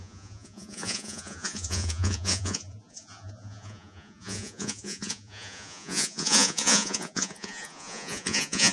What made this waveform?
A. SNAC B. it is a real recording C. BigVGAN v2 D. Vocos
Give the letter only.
D